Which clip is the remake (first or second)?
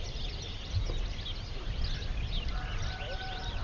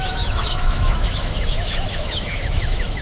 second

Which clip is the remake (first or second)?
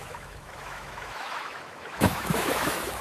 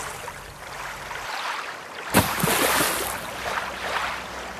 first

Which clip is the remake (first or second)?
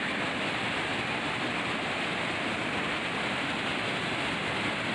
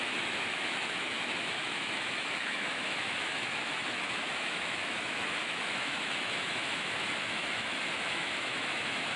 second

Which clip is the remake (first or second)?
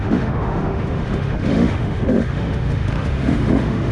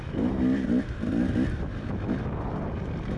first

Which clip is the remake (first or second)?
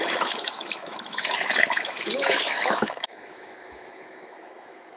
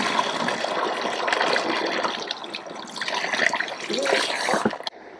first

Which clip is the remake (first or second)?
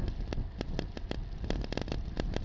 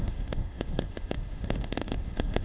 second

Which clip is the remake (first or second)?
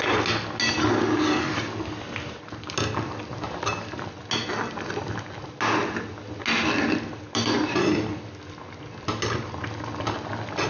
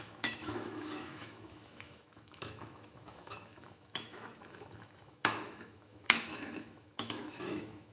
second